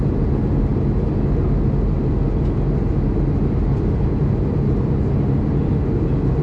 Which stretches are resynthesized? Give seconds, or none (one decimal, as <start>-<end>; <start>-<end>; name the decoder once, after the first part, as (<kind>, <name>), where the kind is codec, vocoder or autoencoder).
none